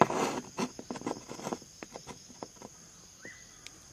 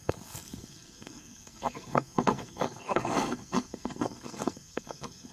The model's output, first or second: second